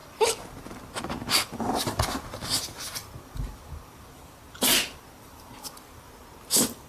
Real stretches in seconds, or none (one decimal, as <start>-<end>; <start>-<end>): 0.0-6.9